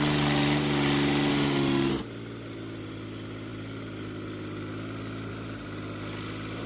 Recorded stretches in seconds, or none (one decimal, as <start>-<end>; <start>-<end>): 0.0-1.3; 1.9-6.7